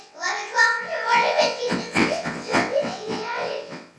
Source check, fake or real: fake